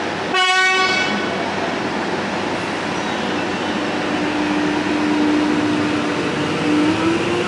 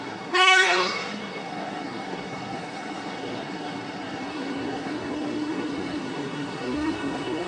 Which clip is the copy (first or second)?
second